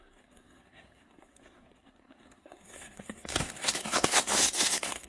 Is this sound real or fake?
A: fake